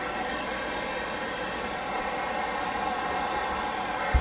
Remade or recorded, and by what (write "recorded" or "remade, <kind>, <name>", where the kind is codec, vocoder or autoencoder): recorded